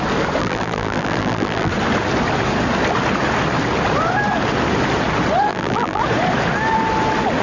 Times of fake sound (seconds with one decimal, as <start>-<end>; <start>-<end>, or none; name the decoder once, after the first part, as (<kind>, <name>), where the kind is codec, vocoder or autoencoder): 0.4-1.7 (vocoder, BigVGAN v2); 5.5-6.0